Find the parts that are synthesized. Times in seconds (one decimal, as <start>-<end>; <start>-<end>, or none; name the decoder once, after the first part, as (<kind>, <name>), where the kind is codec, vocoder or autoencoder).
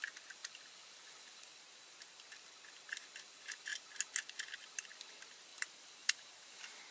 5.5-6.4 (vocoder, BigVGAN v2)